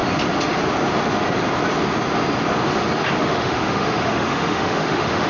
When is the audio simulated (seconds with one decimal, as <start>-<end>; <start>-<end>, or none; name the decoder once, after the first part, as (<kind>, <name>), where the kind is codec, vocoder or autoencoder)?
3.2-5.3 (autoencoder, DAC-VAE)

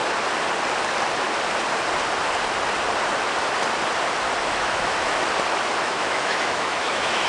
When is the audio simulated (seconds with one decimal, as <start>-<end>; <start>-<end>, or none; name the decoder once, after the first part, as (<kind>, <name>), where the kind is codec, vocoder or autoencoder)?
4.4-5.2 (autoencoder, DAC-VAE); 5.8-7.3

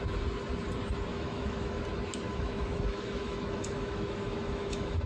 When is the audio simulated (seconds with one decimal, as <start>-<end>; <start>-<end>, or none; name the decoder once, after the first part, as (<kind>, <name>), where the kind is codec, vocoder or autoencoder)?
1.1-1.8 (autoencoder, DAC-VAE); 2.3-5.1

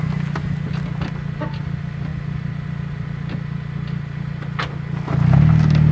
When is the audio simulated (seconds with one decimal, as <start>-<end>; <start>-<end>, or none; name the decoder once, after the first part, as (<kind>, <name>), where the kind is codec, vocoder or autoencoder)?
none

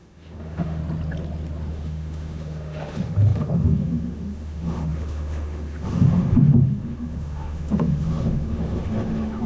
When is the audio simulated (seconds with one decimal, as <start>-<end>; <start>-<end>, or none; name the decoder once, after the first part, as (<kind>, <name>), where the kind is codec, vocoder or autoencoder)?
0.0-0.8 (autoencoder, DAC-VAE); 1.7-9.5

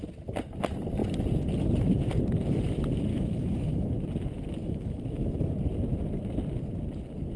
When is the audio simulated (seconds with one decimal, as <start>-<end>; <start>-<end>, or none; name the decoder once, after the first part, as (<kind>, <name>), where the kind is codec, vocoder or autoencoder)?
3.1-3.9 (autoencoder, DAC-VAE); 4.6-5.5